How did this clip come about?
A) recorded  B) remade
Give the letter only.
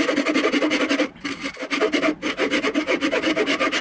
A